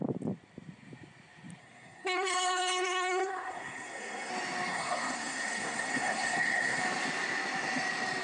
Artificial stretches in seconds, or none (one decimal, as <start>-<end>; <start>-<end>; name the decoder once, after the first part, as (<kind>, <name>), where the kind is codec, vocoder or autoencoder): 1.6-4.3 (codec, SNAC); 4.7-6.8